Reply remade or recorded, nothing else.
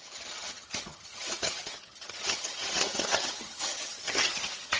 remade